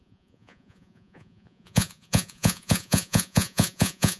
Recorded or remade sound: remade